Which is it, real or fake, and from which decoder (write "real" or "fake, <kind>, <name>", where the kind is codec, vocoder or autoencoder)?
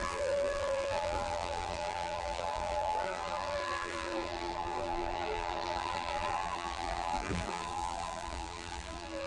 fake, vocoder, BigVGAN v2